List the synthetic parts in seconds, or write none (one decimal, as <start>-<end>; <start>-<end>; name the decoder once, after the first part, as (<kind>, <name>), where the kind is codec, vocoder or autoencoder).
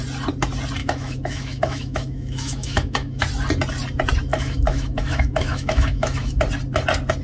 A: 0.8-3.2 (autoencoder, DAC-VAE); 4.3-6.4